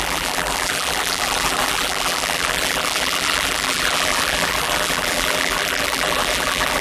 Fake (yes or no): yes